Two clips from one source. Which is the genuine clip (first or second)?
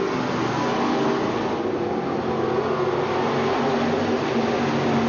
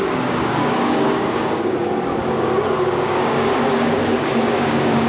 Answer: first